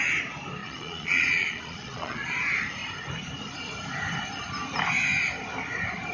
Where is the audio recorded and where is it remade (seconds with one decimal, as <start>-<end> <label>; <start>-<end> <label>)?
0.0-0.6 recorded; 0.6-2.3 remade; 2.3-6.1 recorded